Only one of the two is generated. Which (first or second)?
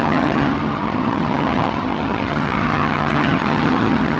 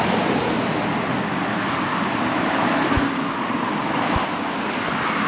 first